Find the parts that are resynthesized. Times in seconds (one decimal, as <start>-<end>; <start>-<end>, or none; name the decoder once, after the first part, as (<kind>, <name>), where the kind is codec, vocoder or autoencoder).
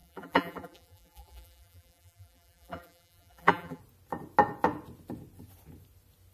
0.0-3.8 (vocoder, BigVGAN v2)